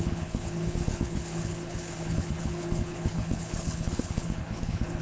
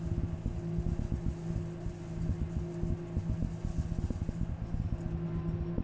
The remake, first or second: first